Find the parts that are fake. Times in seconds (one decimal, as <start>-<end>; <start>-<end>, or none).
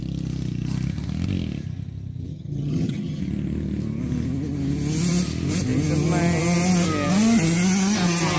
2.3-3.2